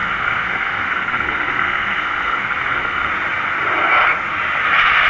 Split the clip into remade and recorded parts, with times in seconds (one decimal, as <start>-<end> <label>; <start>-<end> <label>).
0.0-3.1 remade; 3.1-5.1 recorded